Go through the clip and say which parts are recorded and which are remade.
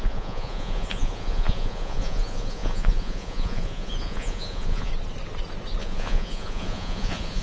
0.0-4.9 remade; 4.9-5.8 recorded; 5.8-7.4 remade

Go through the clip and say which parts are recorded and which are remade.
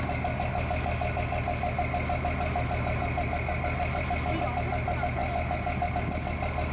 0.0-6.7 recorded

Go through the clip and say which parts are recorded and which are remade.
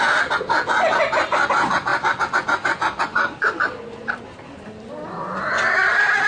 0.0-6.3 recorded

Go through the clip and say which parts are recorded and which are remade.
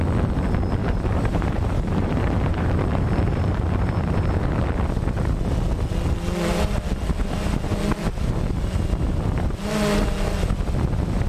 0.0-0.8 recorded; 0.8-4.3 remade; 4.3-11.3 recorded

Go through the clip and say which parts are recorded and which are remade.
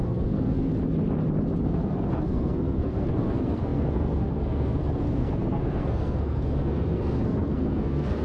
0.0-0.7 remade; 0.7-1.6 recorded; 1.6-8.2 remade